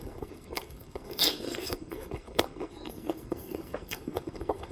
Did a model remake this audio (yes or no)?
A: yes